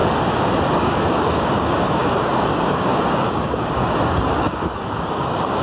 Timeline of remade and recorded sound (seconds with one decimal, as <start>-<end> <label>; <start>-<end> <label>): 0.0-0.7 recorded; 0.7-5.6 remade